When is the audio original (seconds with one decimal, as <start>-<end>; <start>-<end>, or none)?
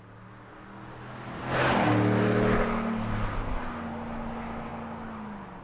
0.0-5.6